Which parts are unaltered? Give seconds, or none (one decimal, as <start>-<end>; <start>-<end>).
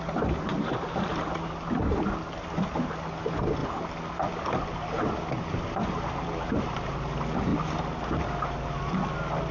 0.0-9.5